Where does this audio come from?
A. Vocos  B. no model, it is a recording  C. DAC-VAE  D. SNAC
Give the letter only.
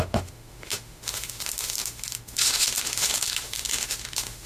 C